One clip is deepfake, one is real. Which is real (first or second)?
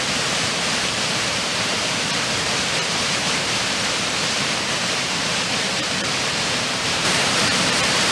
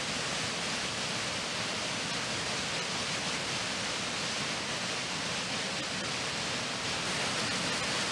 second